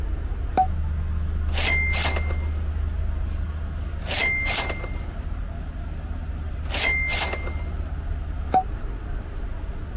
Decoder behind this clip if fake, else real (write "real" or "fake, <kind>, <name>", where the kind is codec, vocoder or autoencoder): real